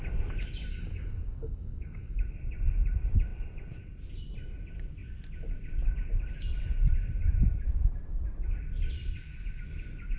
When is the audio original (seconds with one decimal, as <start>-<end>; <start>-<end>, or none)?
0.0-0.7; 2.2-10.2